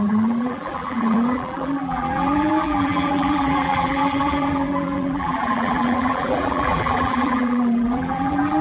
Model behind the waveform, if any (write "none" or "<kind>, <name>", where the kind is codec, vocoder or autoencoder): vocoder, BigVGAN v2